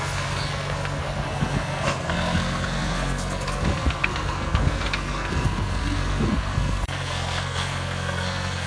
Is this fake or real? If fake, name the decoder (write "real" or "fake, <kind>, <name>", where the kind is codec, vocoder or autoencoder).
fake, codec, SNAC